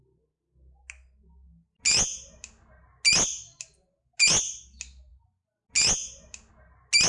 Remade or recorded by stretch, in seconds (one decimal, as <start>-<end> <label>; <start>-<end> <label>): 0.0-7.1 recorded